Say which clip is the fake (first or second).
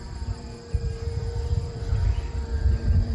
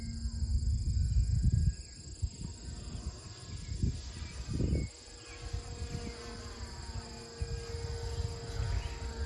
first